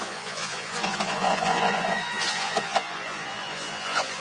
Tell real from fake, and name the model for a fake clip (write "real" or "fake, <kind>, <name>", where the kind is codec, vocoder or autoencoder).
fake, vocoder, Vocos